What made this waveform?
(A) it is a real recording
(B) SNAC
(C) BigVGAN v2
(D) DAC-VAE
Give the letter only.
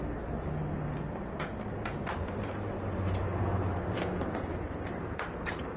A